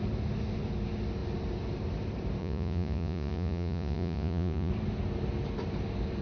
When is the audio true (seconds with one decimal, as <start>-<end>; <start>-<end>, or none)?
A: 0.0-2.4; 4.7-6.2